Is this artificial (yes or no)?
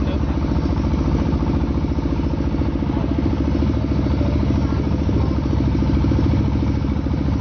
no